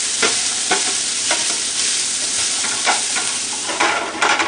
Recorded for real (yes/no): yes